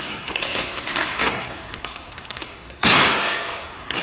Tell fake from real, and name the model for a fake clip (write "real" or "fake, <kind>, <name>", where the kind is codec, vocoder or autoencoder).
fake, codec, SNAC